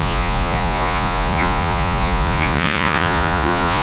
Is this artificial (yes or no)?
yes